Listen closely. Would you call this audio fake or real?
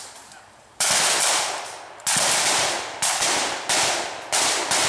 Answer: real